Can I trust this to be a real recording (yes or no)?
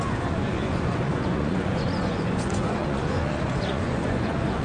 no